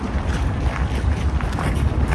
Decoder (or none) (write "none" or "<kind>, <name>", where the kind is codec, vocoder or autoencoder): vocoder, BigVGAN v2